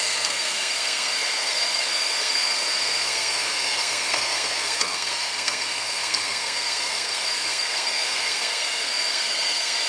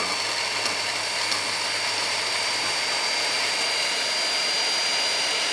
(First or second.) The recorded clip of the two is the second